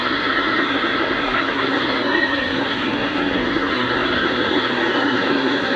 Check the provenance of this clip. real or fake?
fake